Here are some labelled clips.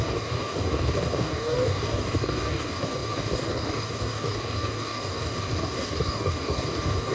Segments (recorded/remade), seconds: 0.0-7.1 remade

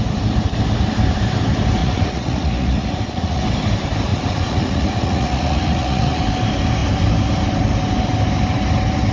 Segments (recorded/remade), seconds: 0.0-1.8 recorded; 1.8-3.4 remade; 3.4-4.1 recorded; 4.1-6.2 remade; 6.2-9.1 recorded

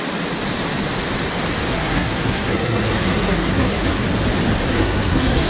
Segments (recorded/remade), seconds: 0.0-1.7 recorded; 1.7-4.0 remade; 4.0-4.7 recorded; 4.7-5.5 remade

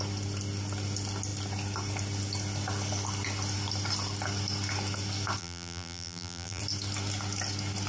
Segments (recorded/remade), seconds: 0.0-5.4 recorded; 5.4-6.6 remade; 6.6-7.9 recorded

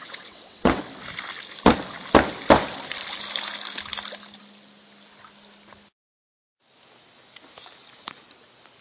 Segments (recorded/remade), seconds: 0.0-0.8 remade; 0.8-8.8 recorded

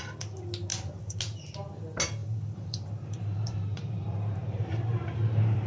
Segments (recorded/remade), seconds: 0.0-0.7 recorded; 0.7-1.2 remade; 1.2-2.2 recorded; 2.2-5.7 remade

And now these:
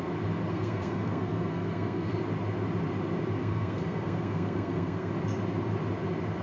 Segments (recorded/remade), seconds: 0.0-0.5 recorded; 0.5-2.1 remade; 2.1-3.4 recorded; 3.4-5.1 remade; 5.1-6.4 recorded